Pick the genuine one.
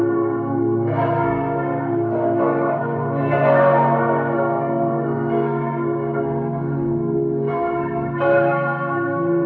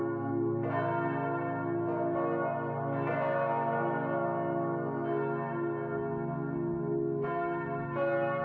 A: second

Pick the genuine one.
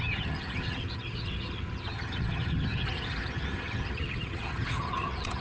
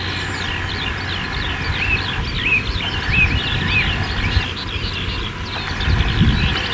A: second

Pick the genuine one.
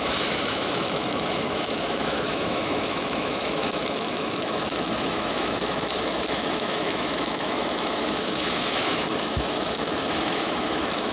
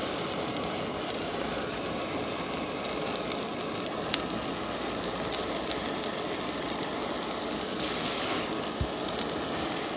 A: second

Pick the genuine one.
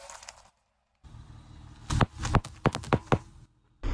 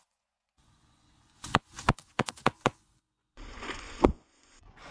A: first